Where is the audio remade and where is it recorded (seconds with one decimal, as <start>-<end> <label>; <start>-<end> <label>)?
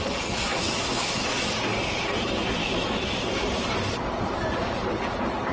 0.0-0.5 recorded; 0.5-1.5 remade; 1.5-2.6 recorded; 2.6-3.4 remade; 3.4-5.5 recorded